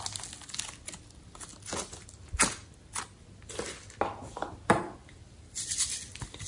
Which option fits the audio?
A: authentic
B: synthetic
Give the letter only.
A